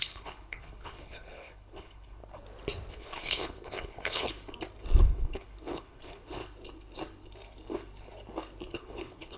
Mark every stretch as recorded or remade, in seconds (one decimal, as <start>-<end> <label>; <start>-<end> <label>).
0.0-2.2 remade; 2.2-2.9 recorded; 2.9-4.3 remade; 4.3-5.0 recorded; 5.0-6.4 remade; 6.4-8.7 recorded; 8.7-9.4 remade